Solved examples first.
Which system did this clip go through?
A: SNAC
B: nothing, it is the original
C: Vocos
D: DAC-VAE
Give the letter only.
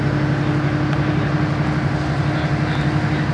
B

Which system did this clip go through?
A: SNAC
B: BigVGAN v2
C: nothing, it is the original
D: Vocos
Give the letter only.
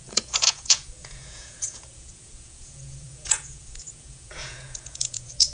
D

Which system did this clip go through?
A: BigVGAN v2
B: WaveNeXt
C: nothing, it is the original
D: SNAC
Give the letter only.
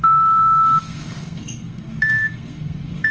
D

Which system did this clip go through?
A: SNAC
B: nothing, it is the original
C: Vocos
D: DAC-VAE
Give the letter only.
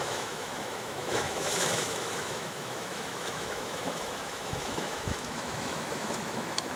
D